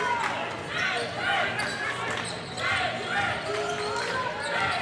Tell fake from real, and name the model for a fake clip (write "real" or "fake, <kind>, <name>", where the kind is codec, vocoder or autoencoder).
real